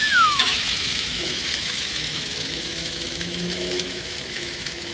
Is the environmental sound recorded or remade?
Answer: remade